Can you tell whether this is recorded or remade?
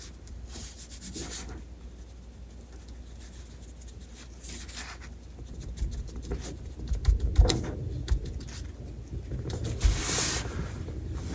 recorded